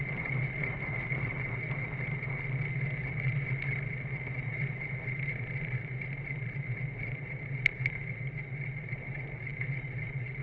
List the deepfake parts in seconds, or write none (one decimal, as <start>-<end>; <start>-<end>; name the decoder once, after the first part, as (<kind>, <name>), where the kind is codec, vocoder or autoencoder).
none